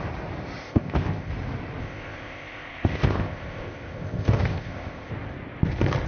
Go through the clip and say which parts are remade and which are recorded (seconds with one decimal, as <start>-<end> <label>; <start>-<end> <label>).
0.0-0.6 recorded; 0.6-1.3 remade; 1.3-1.8 recorded; 1.8-5.1 remade; 5.1-6.1 recorded